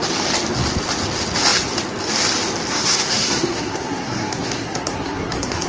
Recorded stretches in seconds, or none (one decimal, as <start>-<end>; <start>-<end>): 0.0-2.7